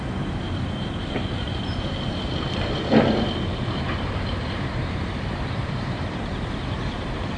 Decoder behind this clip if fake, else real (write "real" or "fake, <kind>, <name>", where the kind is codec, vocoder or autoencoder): fake, vocoder, BigVGAN v2